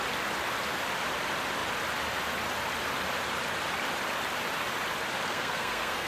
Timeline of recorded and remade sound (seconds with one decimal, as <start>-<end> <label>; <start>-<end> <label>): 0.0-5.3 recorded; 5.3-6.1 remade